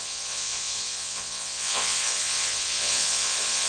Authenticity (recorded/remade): remade